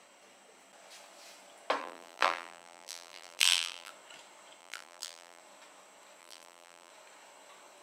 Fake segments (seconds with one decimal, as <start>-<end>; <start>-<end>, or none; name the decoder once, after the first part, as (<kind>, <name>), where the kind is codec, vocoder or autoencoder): 1.8-3.9 (vocoder, BigVGAN v2); 4.6-5.4; 6.2-6.9